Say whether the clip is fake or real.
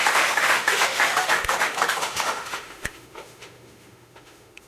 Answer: fake